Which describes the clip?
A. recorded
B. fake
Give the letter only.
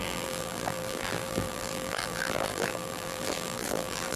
B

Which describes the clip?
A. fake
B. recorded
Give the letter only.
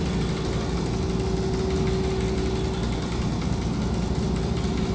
B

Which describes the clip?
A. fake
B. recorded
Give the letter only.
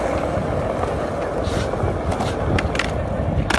B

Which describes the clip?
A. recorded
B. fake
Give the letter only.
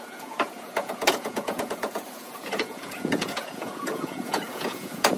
B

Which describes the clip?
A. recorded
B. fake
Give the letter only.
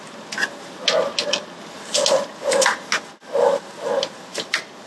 A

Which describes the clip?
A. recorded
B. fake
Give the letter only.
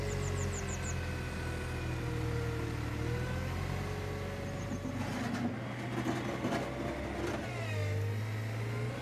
A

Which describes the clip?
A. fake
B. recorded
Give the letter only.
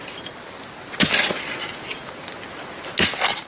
B